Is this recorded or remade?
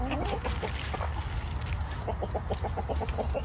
recorded